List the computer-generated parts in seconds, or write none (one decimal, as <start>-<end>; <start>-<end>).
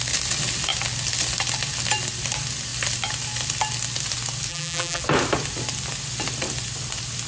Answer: 4.5-5.0